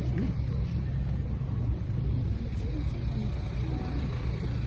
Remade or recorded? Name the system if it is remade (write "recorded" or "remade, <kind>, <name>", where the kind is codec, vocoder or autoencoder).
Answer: recorded